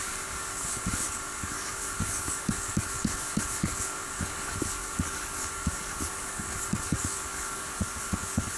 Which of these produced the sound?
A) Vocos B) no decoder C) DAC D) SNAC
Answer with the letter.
C